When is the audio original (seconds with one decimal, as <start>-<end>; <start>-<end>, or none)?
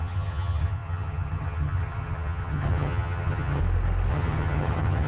3.6-4.1